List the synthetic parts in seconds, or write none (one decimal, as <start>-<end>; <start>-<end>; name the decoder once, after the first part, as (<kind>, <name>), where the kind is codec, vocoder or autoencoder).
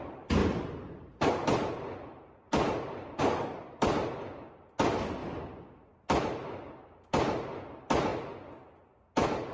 5.2-5.9 (vocoder, BigVGAN v2)